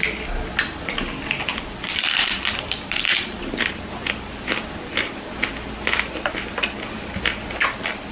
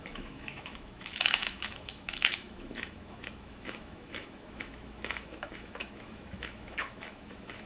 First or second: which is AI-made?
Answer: second